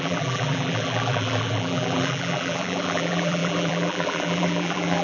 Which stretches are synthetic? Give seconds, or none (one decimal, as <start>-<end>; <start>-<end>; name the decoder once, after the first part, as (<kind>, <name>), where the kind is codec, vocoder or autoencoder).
0.0-5.0 (vocoder, BigVGAN v2)

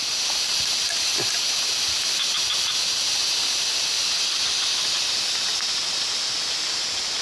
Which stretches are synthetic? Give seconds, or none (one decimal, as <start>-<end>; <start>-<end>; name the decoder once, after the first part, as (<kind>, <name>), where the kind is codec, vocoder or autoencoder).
none

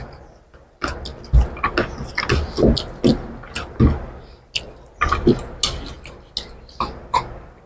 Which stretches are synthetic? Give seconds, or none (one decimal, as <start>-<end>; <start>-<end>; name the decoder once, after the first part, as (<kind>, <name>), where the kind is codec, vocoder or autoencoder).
none

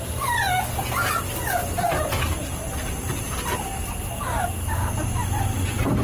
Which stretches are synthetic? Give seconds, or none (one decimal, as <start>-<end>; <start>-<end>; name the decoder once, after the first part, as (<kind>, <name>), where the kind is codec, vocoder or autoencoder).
none